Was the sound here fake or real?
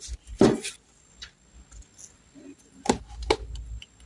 real